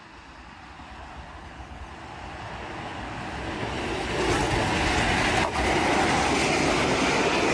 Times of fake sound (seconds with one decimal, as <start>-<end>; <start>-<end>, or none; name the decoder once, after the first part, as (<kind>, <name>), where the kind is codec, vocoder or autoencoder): 1.4-1.9 (codec, HILCodec)